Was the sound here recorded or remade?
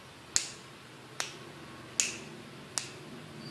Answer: recorded